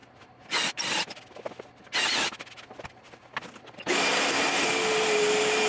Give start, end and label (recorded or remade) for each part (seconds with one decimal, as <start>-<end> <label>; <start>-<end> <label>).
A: 0.0-5.7 recorded